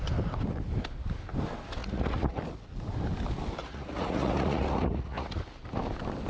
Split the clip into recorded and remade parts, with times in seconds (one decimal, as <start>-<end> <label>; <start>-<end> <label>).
0.0-1.8 recorded; 1.8-2.4 remade; 2.4-3.6 recorded; 3.6-5.4 remade; 5.4-6.3 recorded

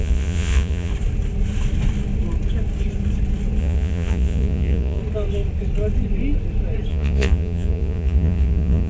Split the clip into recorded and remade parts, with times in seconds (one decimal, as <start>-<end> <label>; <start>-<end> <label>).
0.0-0.9 remade; 0.9-3.6 recorded; 3.6-5.0 remade; 5.0-6.9 recorded; 6.9-8.9 remade

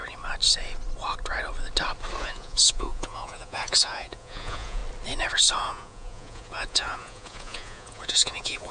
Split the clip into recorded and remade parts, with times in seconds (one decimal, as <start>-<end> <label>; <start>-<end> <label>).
0.0-2.2 recorded; 2.2-4.8 remade; 4.8-5.6 recorded; 5.6-8.7 remade

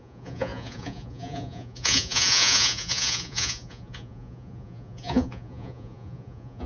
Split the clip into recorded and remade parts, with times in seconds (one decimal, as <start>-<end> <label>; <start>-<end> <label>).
0.0-6.7 remade

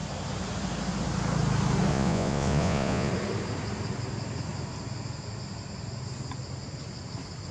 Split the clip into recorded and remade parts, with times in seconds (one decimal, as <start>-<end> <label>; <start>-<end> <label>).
0.0-1.9 recorded; 1.9-3.1 remade; 3.1-7.5 recorded

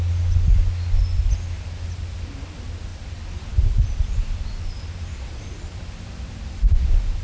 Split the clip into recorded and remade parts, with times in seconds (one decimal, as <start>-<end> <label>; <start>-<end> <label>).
0.0-7.2 recorded